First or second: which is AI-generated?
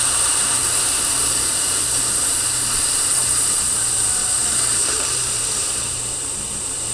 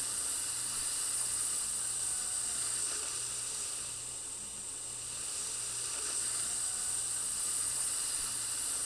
first